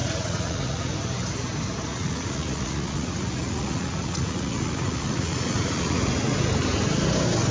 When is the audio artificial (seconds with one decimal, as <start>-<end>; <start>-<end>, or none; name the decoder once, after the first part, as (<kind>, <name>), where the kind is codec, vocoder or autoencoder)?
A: 0.0-0.8 (vocoder, Vocos); 1.9-6.1